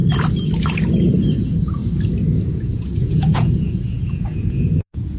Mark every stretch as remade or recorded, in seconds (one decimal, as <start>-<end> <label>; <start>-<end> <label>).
0.0-1.4 recorded; 1.4-1.8 remade; 1.8-2.5 recorded; 2.5-5.2 remade